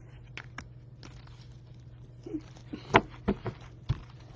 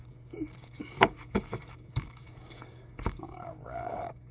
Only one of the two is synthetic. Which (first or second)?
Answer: second